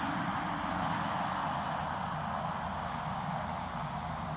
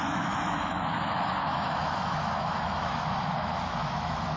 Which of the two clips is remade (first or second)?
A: second